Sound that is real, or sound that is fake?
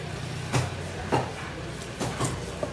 real